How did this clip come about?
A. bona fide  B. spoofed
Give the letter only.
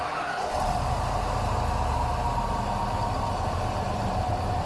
A